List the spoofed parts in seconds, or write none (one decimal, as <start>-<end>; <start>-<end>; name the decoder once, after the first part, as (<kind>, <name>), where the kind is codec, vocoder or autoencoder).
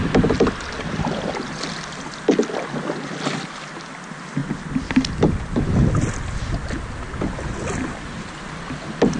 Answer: none